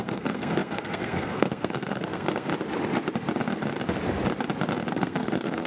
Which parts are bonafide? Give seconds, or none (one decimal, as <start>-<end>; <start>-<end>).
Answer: 2.5-4.9